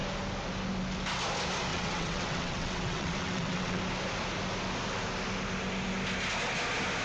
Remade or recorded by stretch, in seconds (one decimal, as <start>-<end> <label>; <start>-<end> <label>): 0.0-1.7 recorded; 1.7-3.8 remade; 3.8-7.0 recorded